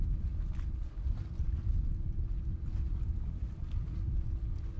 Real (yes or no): yes